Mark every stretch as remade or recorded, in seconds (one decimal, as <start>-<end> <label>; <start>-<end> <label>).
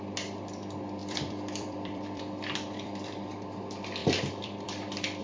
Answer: 0.0-1.0 recorded; 1.0-3.6 remade; 3.6-4.0 recorded; 4.0-5.2 remade